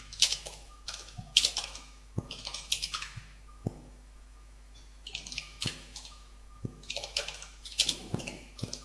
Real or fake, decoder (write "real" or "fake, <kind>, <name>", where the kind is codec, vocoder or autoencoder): fake, autoencoder, DAC-VAE